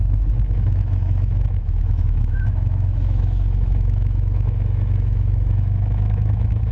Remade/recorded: remade